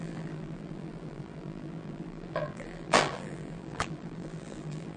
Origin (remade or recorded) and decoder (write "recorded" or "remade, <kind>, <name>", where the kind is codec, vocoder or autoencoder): remade, vocoder, BigVGAN v2